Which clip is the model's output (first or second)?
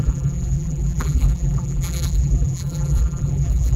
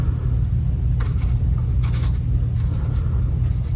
first